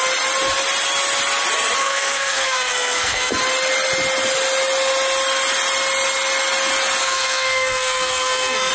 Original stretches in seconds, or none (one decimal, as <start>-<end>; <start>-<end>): 0.0-1.8; 3.3-7.0